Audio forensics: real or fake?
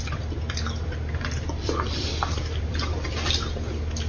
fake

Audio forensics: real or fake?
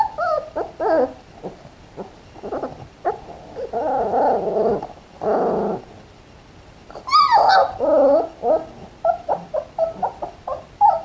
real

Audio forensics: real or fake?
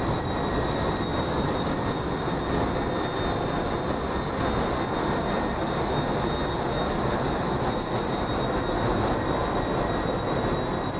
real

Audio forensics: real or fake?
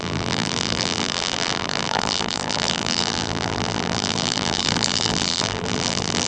fake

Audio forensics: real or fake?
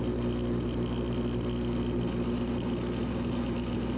real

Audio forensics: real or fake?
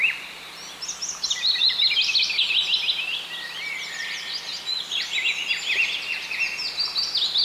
real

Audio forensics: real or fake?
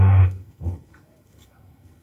fake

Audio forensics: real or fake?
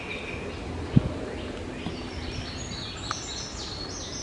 real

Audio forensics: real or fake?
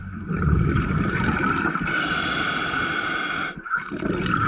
real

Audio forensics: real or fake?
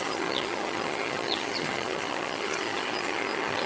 fake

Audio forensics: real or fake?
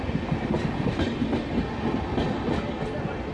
real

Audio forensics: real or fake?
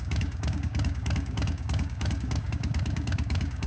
fake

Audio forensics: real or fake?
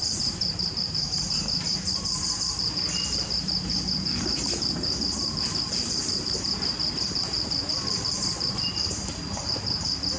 fake